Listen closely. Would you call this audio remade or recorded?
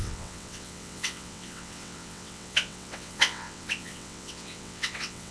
remade